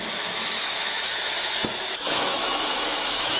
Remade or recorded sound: remade